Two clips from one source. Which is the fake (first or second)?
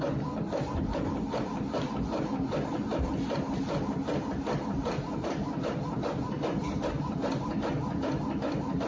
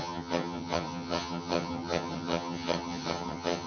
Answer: second